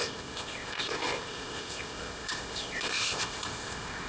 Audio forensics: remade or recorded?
remade